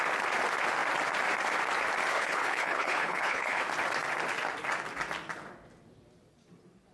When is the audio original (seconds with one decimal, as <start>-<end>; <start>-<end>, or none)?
0.0-2.1; 3.6-6.9